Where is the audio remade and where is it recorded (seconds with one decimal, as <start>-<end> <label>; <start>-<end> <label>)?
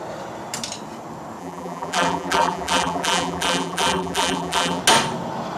0.0-1.4 recorded; 1.4-4.8 remade; 4.8-5.6 recorded